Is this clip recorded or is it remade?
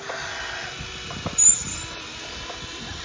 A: recorded